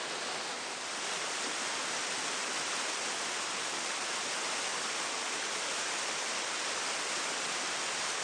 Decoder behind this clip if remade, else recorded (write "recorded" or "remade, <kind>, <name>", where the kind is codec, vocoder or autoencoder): recorded